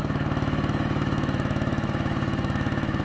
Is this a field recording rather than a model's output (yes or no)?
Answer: no